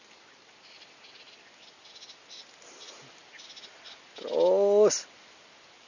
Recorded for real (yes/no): yes